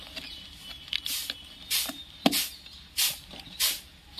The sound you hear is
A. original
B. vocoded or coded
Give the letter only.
A